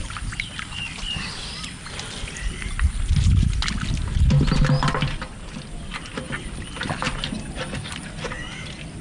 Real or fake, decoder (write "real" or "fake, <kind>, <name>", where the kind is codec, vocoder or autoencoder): real